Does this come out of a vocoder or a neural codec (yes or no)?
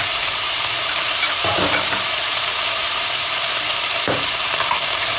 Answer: yes